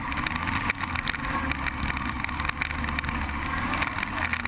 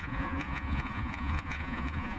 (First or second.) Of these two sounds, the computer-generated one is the second